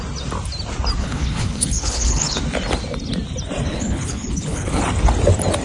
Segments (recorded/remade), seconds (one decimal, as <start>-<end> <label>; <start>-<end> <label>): 0.0-1.0 recorded; 1.0-2.4 remade; 2.4-3.7 recorded; 3.7-4.8 remade; 4.8-5.6 recorded